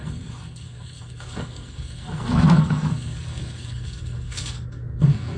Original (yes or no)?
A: no